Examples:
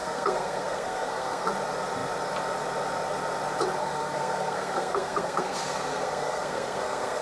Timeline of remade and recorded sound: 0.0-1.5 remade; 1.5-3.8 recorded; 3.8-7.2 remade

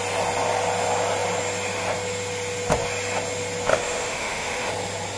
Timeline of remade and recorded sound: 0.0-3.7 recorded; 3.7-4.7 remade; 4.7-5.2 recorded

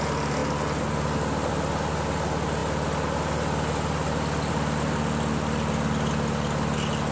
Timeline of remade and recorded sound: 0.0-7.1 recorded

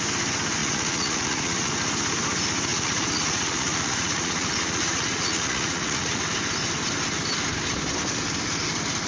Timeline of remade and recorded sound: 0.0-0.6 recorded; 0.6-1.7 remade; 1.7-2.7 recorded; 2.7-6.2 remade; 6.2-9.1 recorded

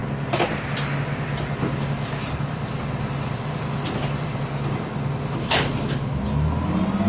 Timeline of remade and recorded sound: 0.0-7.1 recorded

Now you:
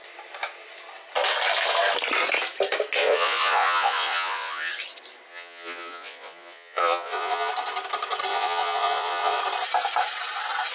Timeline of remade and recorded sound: 0.0-3.0 recorded; 3.0-4.7 remade; 4.7-5.3 recorded; 5.3-7.5 remade; 7.5-8.3 recorded; 8.3-9.4 remade; 9.4-10.7 recorded

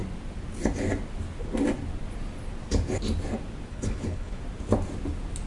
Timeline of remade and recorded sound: 0.0-3.7 recorded; 3.7-4.4 remade; 4.4-5.5 recorded